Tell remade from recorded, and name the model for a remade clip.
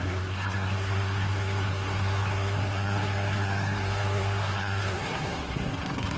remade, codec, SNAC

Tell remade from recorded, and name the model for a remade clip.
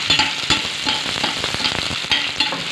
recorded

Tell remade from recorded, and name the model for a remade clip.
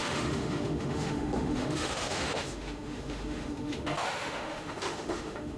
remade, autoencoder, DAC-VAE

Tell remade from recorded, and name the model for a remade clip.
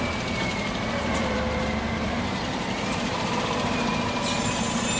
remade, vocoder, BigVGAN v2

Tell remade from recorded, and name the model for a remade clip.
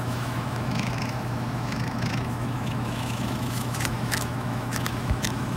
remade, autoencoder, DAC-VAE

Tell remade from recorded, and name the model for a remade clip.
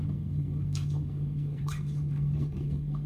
remade, codec, SNAC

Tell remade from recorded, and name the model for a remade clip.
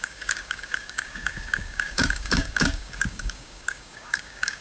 remade, codec, DAC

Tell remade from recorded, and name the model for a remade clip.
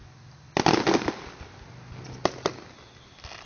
recorded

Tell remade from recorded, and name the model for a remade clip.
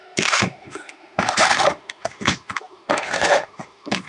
remade, autoencoder, DAC-VAE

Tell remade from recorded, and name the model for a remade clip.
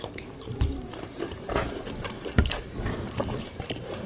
remade, vocoder, BigVGAN v2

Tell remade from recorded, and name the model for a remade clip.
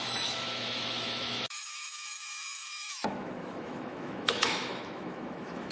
remade, autoencoder, DAC-VAE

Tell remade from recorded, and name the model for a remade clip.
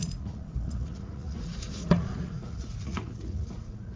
remade, vocoder, Vocos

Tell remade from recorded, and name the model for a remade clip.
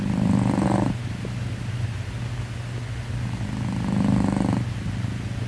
remade, vocoder, BigVGAN v2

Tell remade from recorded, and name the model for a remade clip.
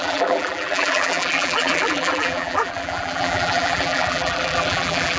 remade, vocoder, BigVGAN v2